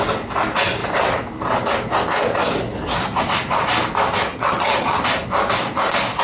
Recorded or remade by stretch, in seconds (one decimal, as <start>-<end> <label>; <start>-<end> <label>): 0.0-4.3 recorded; 4.3-5.0 remade; 5.0-6.2 recorded

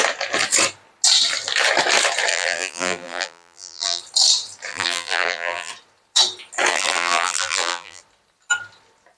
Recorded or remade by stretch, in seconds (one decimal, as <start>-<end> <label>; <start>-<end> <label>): 0.0-2.3 recorded; 2.3-4.0 remade; 4.0-4.7 recorded; 4.7-5.7 remade; 5.7-6.7 recorded; 6.7-8.0 remade; 8.0-9.2 recorded

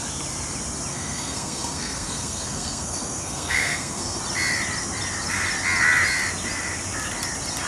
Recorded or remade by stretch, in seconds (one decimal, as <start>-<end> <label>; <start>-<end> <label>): 0.0-0.9 recorded; 0.9-4.2 remade; 4.2-7.7 recorded